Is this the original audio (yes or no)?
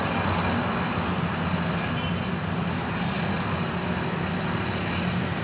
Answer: yes